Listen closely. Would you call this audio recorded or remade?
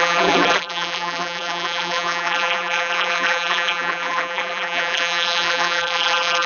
remade